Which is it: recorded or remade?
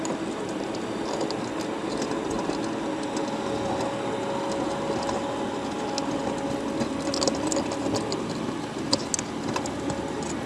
recorded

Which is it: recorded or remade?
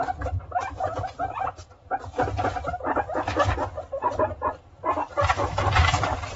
recorded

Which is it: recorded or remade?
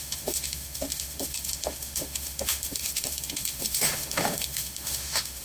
remade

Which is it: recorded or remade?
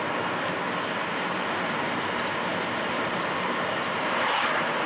recorded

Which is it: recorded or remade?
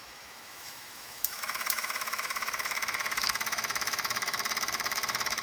remade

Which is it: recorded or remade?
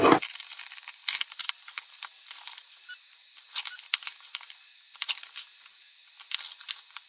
recorded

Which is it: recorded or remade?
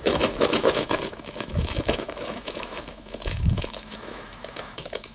remade